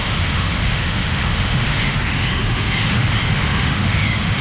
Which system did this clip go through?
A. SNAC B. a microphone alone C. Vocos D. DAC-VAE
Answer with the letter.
D